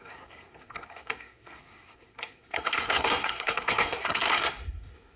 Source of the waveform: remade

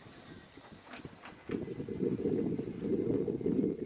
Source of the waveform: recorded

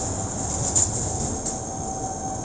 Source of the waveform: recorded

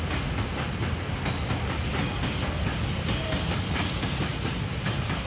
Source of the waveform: recorded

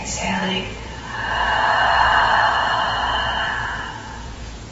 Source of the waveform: remade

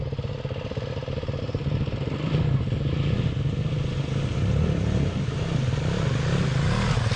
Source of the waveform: recorded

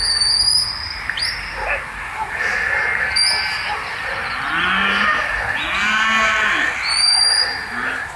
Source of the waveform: recorded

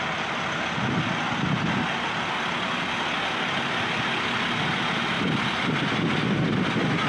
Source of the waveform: recorded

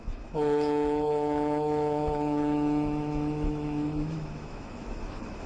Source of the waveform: remade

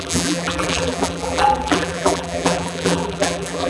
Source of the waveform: remade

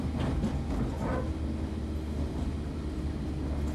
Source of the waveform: recorded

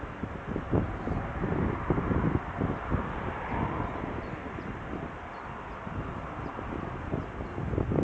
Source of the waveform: recorded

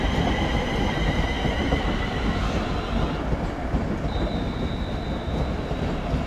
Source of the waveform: recorded